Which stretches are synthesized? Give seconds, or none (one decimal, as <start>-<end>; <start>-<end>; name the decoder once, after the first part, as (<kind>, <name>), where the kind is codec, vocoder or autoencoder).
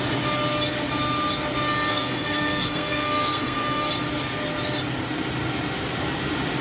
1.9-3.9 (codec, SNAC)